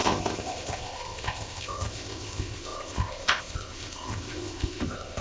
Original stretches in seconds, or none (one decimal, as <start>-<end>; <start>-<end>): none